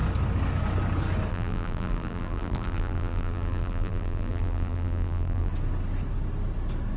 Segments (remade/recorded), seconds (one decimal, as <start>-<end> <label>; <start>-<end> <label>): 0.0-1.3 recorded; 1.3-5.5 remade; 5.5-7.0 recorded